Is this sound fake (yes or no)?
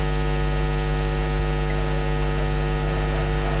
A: no